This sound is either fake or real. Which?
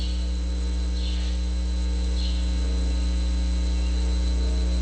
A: real